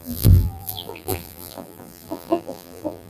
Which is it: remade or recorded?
remade